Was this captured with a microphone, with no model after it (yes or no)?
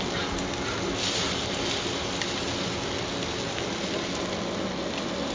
yes